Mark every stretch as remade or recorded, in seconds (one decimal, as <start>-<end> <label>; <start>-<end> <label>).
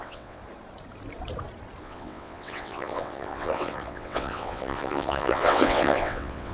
0.0-0.4 remade; 0.4-1.8 recorded; 1.8-6.5 remade